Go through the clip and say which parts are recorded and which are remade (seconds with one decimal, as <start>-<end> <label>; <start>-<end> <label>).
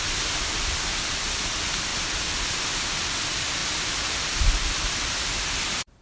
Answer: 0.0-1.9 remade; 1.9-3.0 recorded; 3.0-6.0 remade